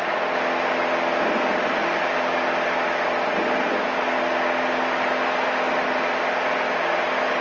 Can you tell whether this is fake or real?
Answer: real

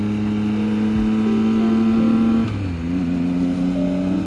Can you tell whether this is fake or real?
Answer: real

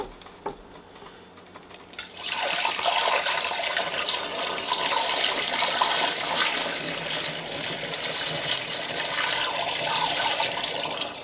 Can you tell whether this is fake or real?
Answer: fake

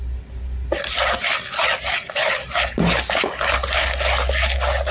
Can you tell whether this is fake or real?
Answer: real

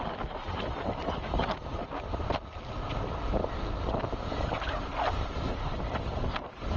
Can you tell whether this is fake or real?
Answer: real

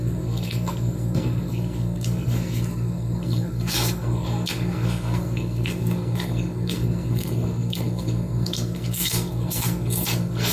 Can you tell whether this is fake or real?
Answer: fake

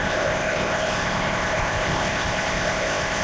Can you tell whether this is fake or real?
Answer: fake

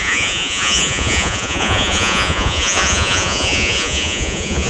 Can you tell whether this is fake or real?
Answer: fake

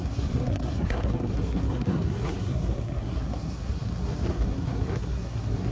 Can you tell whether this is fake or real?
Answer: fake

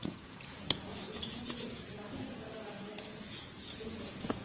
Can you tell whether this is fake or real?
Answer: fake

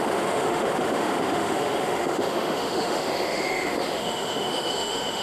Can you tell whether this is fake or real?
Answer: fake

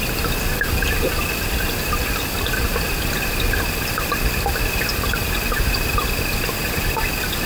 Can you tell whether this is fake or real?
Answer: fake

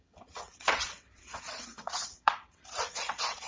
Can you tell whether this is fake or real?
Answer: fake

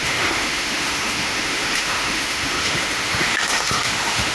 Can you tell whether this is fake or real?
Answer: fake